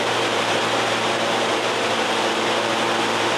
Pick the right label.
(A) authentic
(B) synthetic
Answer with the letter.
B